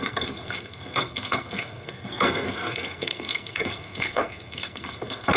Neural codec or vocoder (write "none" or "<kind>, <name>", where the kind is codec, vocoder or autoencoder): codec, SNAC